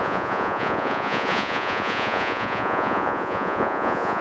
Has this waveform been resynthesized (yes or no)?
yes